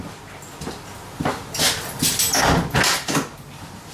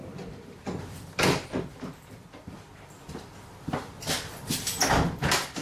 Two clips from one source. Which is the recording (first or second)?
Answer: first